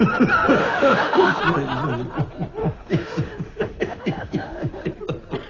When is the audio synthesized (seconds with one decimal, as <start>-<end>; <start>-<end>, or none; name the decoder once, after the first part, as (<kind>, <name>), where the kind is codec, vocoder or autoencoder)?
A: 0.6-1.4 (autoencoder, DAC-VAE); 2.6-4.9